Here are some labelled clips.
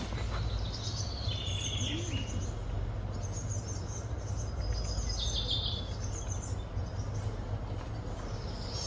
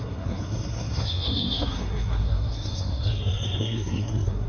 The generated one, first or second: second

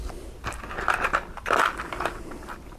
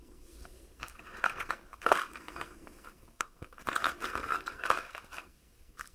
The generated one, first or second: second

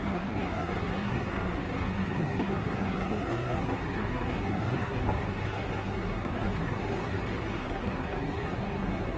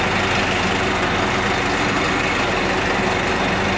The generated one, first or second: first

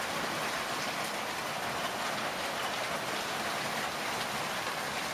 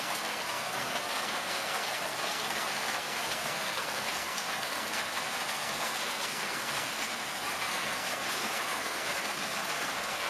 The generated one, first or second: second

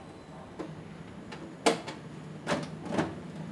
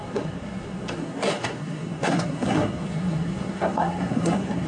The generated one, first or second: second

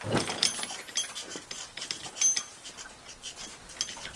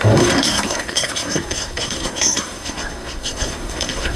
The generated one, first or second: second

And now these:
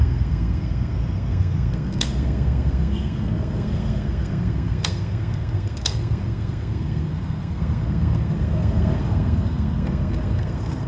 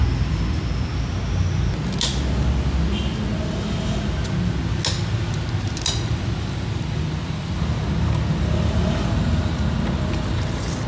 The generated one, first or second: first